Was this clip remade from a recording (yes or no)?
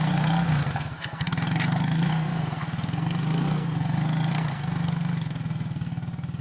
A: yes